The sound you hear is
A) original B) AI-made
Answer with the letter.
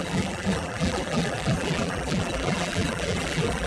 B